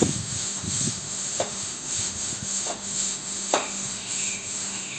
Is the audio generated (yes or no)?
yes